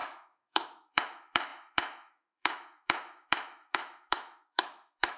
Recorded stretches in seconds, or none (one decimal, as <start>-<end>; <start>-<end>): none